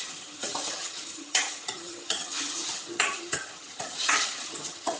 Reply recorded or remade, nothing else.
remade